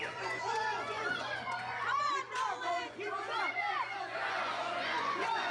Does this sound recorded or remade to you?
remade